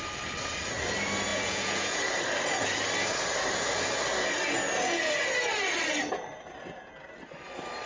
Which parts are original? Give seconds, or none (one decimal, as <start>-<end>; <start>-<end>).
0.0-1.3; 2.0-7.9